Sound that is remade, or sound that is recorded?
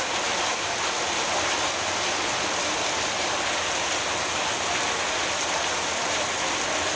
recorded